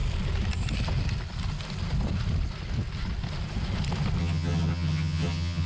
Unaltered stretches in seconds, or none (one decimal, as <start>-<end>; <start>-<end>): 0.0-4.2

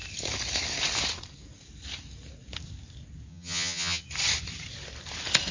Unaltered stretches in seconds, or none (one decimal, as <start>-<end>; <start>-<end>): 0.0-3.3; 4.0-5.5